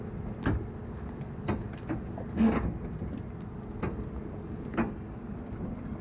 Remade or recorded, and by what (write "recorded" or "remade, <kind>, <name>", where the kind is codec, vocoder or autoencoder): recorded